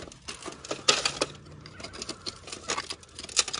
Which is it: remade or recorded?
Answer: recorded